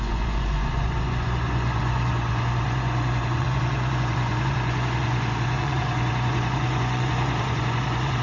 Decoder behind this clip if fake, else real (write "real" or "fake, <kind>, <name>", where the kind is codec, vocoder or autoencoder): fake, vocoder, Vocos